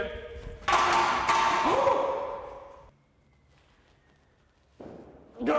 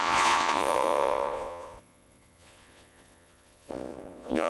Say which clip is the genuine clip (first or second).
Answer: first